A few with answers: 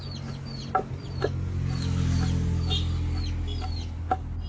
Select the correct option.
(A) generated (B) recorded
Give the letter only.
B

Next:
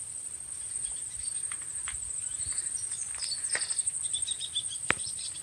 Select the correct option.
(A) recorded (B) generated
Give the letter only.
A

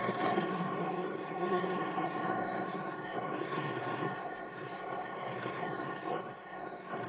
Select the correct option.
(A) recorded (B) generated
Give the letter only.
B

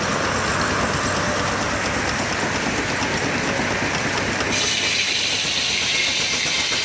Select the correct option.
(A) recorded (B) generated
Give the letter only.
A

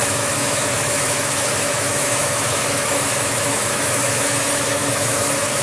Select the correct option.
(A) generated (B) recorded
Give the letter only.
A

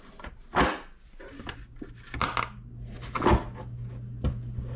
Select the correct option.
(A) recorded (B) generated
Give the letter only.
A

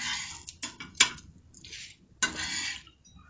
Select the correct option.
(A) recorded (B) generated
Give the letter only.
A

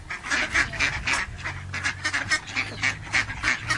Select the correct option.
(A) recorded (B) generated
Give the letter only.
A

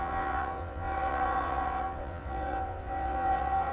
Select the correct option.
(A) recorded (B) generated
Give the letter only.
B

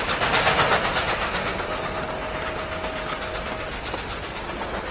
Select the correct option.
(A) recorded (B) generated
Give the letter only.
A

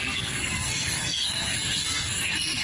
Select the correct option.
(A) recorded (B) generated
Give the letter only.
B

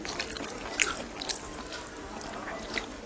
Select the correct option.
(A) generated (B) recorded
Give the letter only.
B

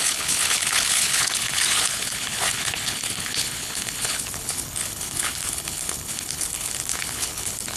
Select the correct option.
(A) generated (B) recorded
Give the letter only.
A